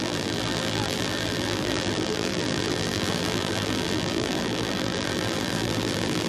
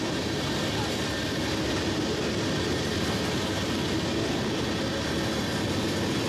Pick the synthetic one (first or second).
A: first